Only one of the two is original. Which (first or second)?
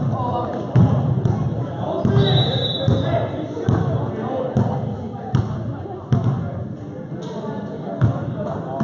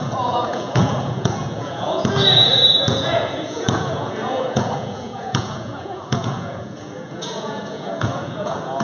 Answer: first